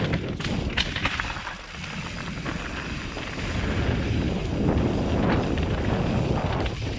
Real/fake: real